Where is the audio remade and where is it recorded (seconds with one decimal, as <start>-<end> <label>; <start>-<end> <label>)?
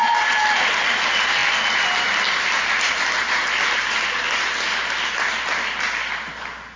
0.0-6.8 recorded